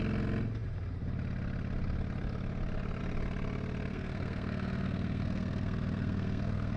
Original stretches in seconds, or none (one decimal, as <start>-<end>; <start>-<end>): 0.0-3.9